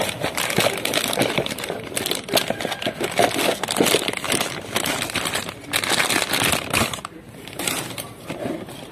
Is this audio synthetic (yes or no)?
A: no